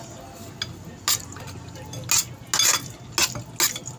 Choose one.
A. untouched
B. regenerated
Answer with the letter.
A